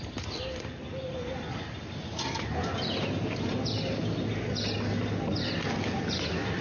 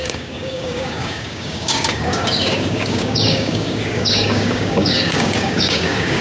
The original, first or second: first